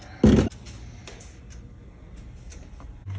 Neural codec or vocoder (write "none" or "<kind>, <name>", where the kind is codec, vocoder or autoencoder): none